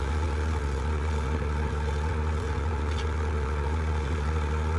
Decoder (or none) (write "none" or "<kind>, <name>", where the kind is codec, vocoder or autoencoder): vocoder, Vocos